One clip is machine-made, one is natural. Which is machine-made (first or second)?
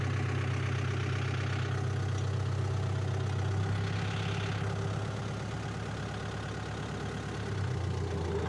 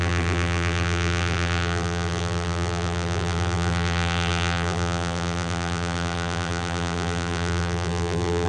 second